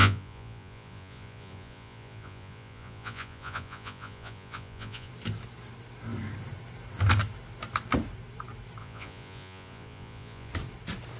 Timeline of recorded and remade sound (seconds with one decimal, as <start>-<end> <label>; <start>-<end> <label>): 0.0-5.1 remade; 5.1-8.8 recorded; 8.8-10.5 remade; 10.5-11.2 recorded